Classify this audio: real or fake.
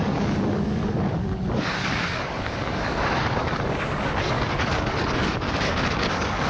fake